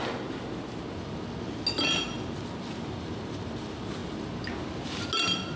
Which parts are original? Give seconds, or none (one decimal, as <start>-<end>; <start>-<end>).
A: 0.0-5.6